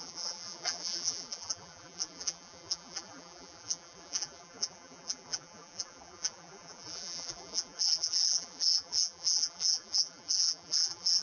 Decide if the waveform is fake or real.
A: fake